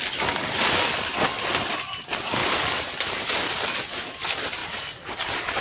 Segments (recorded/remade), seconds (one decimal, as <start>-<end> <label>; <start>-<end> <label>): 0.0-2.4 recorded; 2.4-3.4 remade; 3.4-5.6 recorded